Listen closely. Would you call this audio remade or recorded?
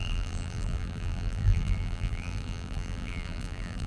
remade